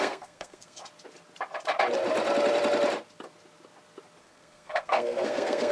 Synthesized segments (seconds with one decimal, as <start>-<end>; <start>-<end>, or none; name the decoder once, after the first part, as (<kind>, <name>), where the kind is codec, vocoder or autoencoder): 0.0-0.8 (codec, SNAC); 4.2-5.7